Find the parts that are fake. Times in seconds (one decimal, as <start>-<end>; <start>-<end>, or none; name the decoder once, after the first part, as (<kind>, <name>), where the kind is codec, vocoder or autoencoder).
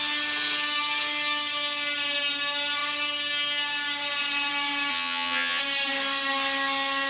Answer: 4.9-5.6 (vocoder, HiFi-GAN)